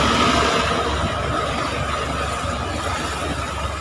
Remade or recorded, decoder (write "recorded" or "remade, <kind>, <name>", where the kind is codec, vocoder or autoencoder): recorded